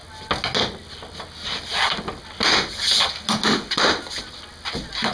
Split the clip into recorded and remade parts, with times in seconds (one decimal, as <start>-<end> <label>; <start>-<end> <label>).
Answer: 0.0-5.1 recorded